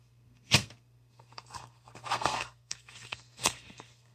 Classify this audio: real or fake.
fake